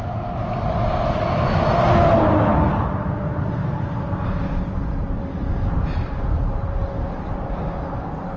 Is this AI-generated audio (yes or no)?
no